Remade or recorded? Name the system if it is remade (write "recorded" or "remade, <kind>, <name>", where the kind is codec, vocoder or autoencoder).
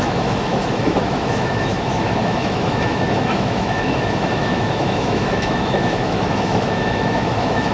remade, autoencoder, DAC-VAE